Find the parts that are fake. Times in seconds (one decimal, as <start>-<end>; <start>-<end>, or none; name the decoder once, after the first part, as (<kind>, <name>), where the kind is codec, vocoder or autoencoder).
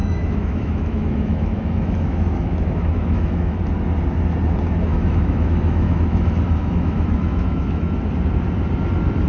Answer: 0.0-3.6 (autoencoder, DAC-VAE); 4.9-8.1